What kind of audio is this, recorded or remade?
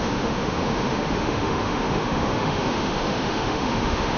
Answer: remade